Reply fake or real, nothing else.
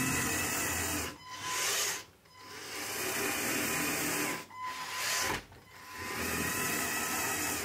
real